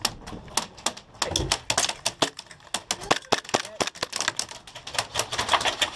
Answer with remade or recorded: recorded